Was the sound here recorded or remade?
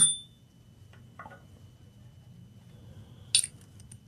recorded